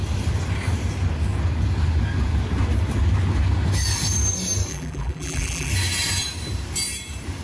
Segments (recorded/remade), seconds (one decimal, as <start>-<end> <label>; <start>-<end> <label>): 0.0-4.7 recorded; 4.7-5.7 remade; 5.7-7.4 recorded